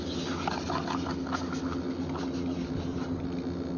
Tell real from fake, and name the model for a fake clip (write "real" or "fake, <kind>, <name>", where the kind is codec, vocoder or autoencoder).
real